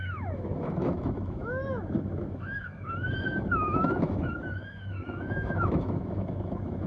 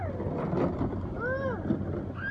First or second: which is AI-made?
first